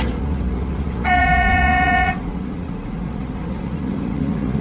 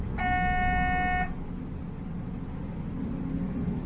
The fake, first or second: first